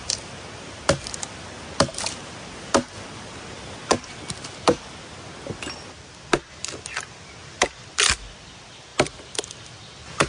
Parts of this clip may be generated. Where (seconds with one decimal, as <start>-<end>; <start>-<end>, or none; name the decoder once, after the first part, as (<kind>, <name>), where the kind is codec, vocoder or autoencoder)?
7.4-8.1 (vocoder, BigVGAN v2)